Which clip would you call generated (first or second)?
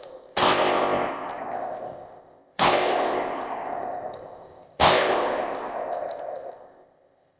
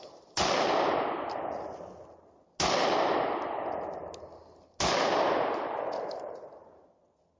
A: first